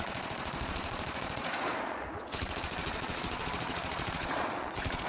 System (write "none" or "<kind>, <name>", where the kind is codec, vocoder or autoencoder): vocoder, Vocos